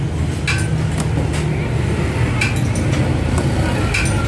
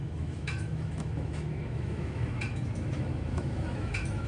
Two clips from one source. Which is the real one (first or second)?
first